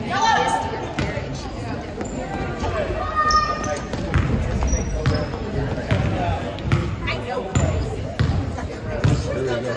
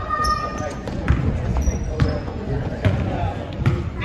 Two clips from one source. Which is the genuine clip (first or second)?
first